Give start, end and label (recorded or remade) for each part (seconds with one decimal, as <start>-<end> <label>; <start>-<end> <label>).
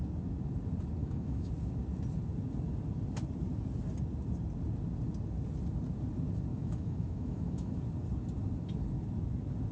0.0-1.0 recorded; 1.0-1.5 remade; 1.5-6.5 recorded; 6.5-7.8 remade; 7.8-9.7 recorded